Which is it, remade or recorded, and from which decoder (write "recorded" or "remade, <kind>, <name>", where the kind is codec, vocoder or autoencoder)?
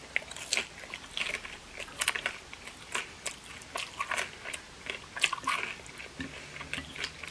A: recorded